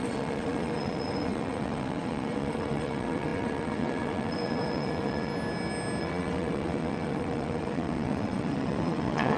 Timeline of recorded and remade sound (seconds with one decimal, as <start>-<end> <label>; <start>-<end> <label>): 0.0-5.3 remade; 5.3-6.0 recorded; 6.0-9.4 remade